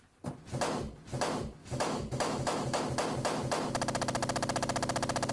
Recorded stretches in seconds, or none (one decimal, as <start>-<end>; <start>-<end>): 0.0-1.6; 2.8-5.3